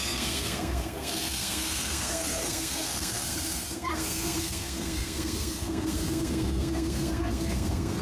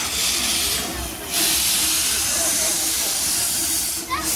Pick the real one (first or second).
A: second